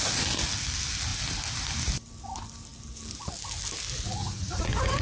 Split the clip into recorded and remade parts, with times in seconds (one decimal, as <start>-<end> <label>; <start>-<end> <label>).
0.0-4.2 recorded; 4.2-5.0 remade

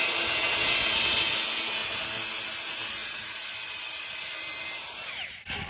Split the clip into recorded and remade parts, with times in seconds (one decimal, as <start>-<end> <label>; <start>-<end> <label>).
0.0-5.7 recorded

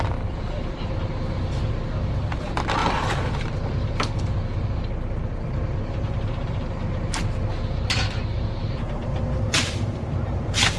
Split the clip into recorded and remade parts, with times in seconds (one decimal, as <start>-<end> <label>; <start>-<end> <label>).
0.0-10.8 remade

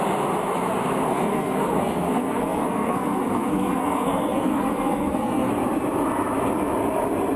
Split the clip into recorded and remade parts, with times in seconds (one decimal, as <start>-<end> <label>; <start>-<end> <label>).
0.0-1.1 recorded; 1.1-5.5 remade; 5.5-7.4 recorded

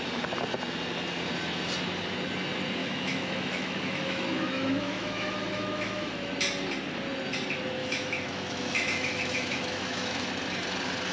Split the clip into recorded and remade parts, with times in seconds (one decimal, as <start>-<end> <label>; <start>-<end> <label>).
0.0-2.8 recorded; 2.8-6.3 remade; 6.3-7.8 recorded; 7.8-10.3 remade; 10.3-11.1 recorded

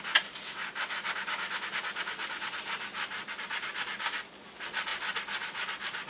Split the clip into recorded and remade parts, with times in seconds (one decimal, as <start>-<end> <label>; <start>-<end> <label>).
0.0-6.1 recorded

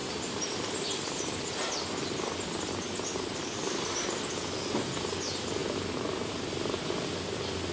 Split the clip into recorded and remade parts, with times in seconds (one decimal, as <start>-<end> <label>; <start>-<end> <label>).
0.0-1.7 remade; 1.7-3.6 recorded; 3.6-4.2 remade; 4.2-5.6 recorded; 5.6-6.3 remade; 6.3-7.7 recorded